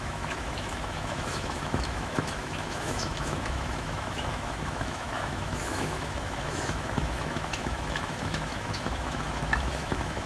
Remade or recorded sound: remade